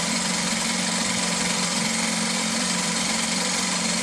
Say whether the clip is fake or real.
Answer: fake